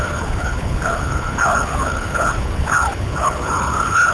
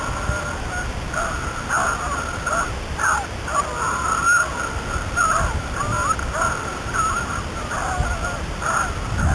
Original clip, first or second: second